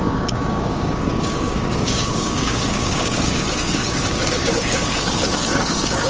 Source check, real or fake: fake